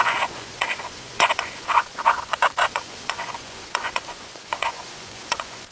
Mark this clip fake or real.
fake